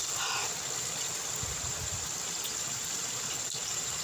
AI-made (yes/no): no